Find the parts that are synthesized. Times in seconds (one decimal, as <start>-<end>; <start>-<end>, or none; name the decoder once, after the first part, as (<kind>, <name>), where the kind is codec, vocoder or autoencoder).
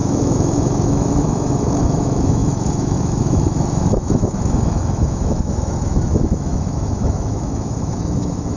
0.0-8.6 (autoencoder, DAC-VAE)